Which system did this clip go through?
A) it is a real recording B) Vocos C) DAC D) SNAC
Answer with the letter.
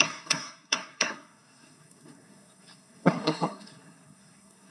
D